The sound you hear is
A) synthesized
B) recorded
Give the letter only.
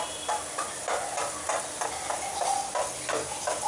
B